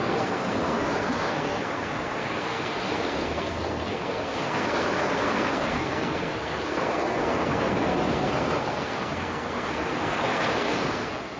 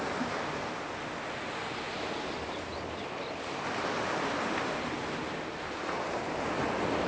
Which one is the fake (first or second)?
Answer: first